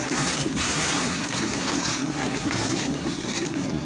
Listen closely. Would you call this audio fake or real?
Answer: fake